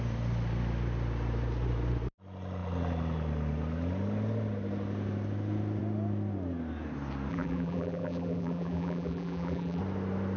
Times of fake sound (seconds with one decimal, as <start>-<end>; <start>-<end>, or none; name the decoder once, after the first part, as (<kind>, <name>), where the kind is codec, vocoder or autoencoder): 7.3-9.8 (vocoder, BigVGAN v2)